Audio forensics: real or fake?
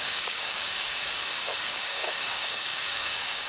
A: fake